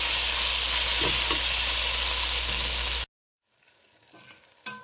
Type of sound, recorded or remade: recorded